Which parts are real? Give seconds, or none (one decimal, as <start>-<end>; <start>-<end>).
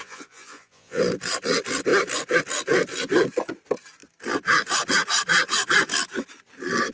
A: 1.0-6.9